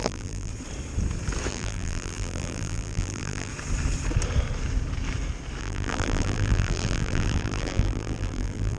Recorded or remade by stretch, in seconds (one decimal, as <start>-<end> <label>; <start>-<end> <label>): 0.0-0.5 remade; 0.5-1.5 recorded; 1.5-3.5 remade; 3.5-5.6 recorded; 5.6-8.8 remade